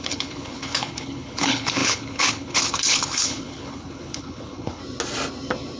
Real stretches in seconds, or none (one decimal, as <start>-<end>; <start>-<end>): 4.8-5.8